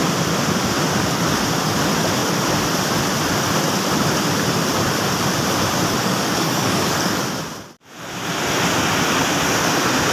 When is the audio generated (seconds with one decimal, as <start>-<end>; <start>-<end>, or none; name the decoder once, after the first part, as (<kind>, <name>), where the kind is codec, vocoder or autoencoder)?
6.0-7.2 (codec, DAC)